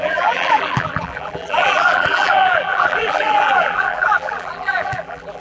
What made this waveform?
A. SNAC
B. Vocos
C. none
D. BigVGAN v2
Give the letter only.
D